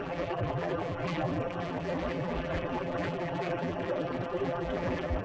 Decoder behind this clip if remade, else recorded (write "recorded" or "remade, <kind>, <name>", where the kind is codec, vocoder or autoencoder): remade, vocoder, BigVGAN v2